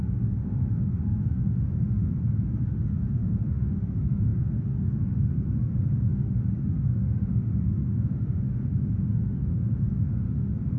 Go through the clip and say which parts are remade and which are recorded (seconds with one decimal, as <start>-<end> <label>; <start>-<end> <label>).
0.0-10.8 remade